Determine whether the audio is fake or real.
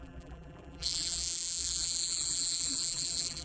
fake